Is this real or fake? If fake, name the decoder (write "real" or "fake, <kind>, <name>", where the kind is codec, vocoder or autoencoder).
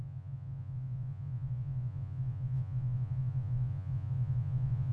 fake, vocoder, Vocos